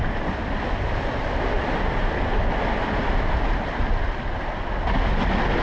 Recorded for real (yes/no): yes